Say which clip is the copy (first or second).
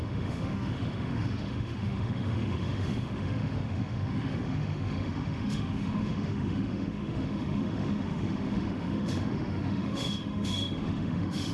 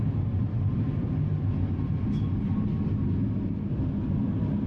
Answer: first